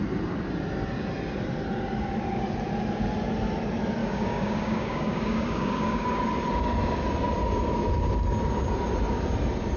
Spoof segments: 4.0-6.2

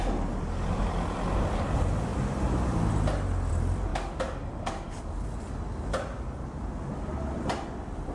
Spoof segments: 3.9-5.3

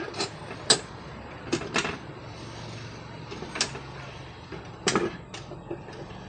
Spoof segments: none

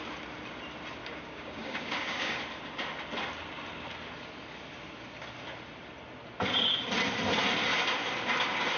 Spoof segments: 1.0-2.4

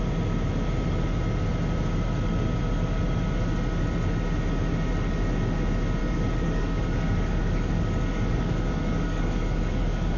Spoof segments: 6.0-10.2

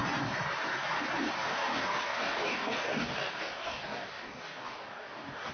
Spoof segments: 1.5-5.5

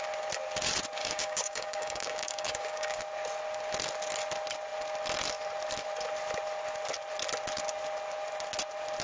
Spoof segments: 1.0-3.0

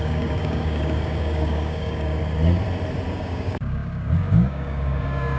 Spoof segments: 0.0-2.2; 3.1-5.4